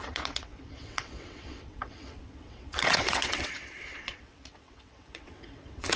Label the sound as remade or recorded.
remade